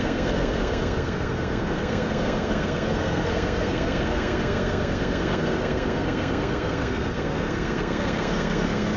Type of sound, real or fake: fake